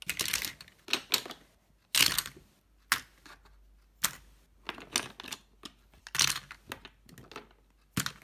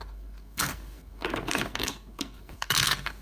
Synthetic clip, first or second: second